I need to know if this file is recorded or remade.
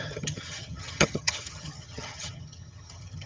remade